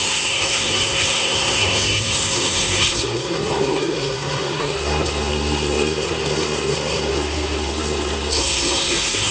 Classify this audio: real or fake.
fake